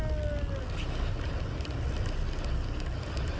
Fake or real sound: real